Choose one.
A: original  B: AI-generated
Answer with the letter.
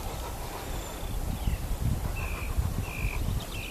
A